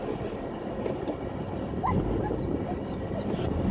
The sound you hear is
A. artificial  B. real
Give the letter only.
B